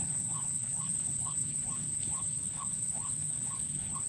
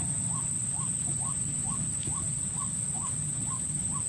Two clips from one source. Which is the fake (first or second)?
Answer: first